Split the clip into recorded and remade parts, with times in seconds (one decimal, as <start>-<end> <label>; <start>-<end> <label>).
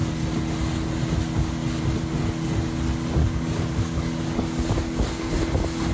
0.0-3.2 recorded; 3.2-5.3 remade; 5.3-5.9 recorded